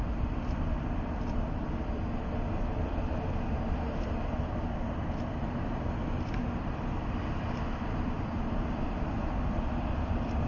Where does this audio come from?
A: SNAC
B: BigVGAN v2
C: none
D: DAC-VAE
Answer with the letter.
B